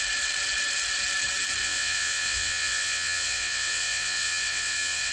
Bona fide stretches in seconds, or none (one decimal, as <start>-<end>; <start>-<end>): 0.0-1.6